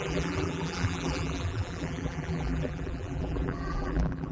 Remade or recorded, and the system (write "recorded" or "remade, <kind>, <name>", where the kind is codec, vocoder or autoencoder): remade, vocoder, BigVGAN v2